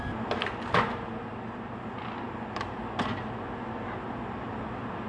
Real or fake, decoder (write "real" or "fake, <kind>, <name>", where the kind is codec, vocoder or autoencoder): real